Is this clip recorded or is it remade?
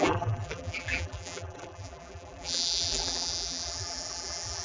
remade